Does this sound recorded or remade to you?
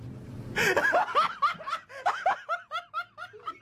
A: recorded